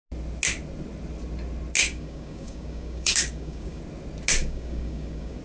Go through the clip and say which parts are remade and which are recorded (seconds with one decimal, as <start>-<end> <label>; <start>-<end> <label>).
0.0-1.8 recorded; 1.8-3.8 remade; 3.8-4.4 recorded; 4.4-5.4 remade